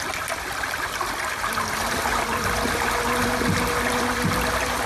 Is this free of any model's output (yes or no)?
yes